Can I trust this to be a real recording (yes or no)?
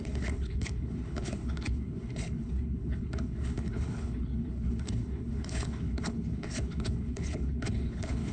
no